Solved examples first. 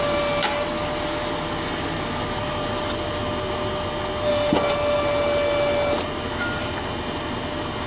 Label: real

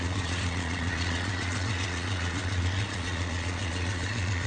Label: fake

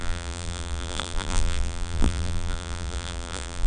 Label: fake